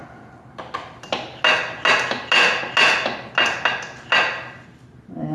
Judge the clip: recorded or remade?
recorded